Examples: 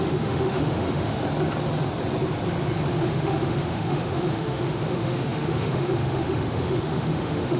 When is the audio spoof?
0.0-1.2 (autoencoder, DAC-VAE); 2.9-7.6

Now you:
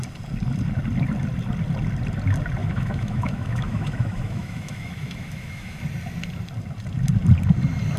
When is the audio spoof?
2.6-5.8 (autoencoder, DAC-VAE)

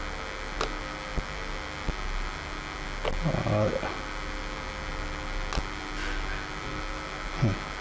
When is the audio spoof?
none

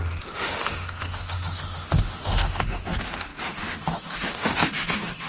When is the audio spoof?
0.0-5.3 (autoencoder, DAC-VAE)

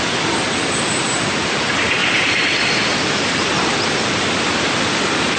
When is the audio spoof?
none